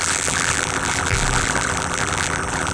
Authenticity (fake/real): fake